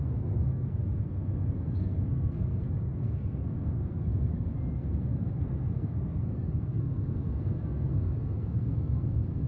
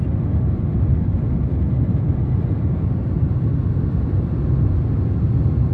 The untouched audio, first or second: second